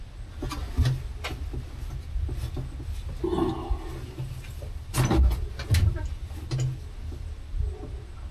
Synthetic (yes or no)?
no